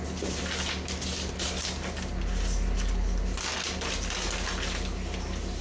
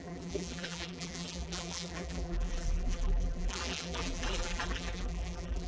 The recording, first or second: first